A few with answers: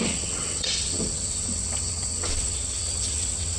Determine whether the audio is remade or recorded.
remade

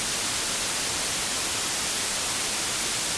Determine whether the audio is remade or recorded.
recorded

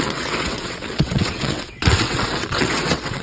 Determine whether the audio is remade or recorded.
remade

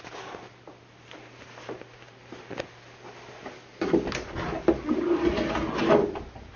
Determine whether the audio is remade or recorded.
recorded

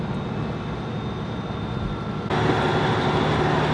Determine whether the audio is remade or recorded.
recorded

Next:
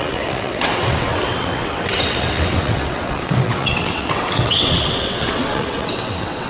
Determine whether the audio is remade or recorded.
remade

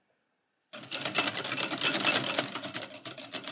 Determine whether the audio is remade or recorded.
recorded